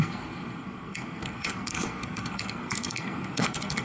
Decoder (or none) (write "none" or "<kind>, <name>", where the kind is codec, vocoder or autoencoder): codec, SNAC